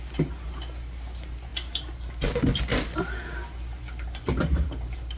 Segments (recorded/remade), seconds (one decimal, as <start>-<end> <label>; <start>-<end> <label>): 0.0-5.2 recorded